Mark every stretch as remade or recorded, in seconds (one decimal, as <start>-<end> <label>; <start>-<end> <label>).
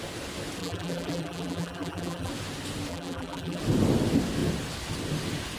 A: 0.0-0.6 recorded; 0.6-2.3 remade; 2.3-2.9 recorded; 2.9-3.6 remade; 3.6-5.6 recorded